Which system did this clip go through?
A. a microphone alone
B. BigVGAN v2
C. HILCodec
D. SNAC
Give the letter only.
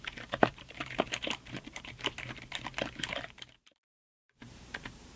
B